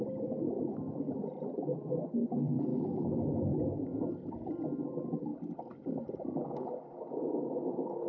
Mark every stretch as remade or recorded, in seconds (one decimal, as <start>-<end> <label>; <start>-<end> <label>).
0.0-2.7 recorded; 2.7-4.0 remade; 4.0-8.1 recorded